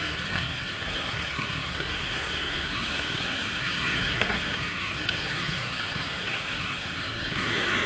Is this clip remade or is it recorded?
remade